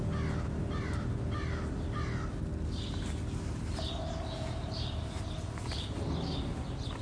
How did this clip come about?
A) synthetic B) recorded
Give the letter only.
B